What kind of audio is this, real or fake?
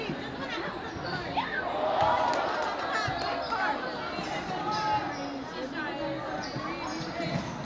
real